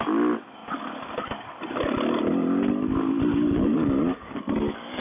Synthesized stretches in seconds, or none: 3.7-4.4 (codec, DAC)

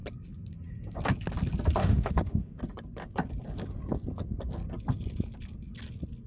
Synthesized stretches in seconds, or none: 1.8-2.6 (autoencoder, DAC-VAE)

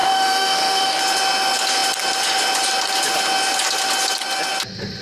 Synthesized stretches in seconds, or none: 0.0-1.0 (autoencoder, DAC-VAE)